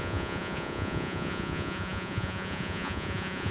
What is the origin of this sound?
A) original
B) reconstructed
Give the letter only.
B